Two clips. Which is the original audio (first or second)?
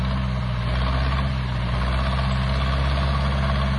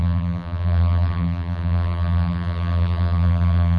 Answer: first